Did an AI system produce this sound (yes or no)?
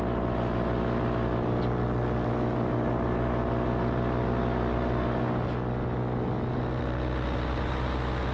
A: no